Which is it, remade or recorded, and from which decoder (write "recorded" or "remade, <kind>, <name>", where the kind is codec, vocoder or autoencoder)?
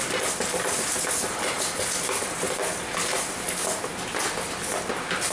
recorded